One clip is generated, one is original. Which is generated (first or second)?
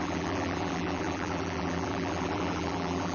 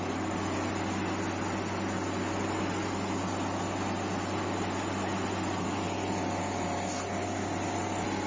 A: first